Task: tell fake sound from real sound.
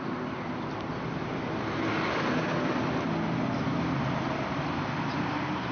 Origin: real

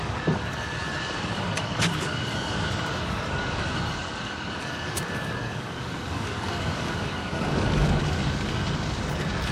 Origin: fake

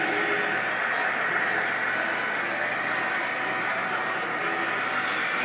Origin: real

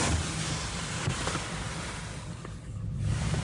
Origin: real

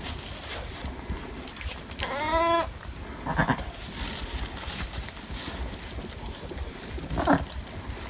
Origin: real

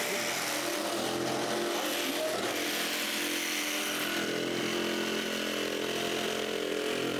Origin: real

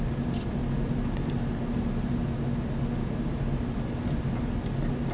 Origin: real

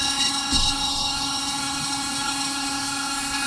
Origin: fake